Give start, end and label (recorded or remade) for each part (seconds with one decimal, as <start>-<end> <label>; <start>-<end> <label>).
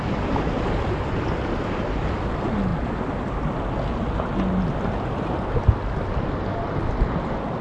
0.0-7.6 recorded